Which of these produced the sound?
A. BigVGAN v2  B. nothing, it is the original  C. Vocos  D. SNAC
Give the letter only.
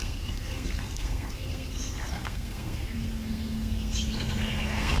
D